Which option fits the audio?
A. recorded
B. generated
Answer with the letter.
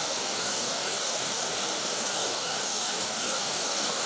B